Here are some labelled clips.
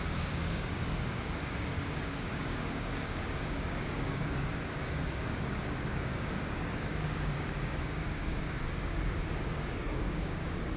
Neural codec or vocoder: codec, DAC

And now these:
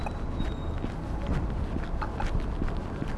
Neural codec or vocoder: none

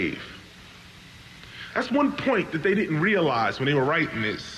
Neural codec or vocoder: none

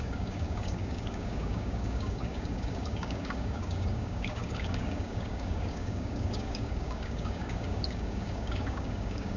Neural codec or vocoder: codec, DAC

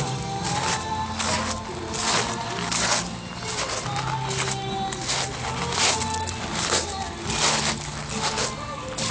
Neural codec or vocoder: none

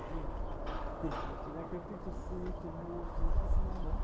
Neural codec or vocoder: none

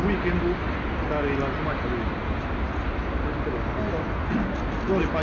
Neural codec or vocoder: none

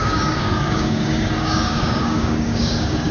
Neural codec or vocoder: codec, DAC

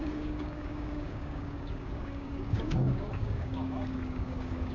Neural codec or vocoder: codec, DAC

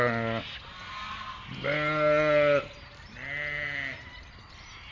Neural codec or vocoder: none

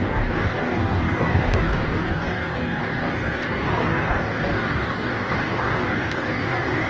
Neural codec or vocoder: codec, DAC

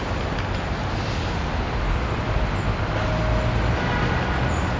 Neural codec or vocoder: none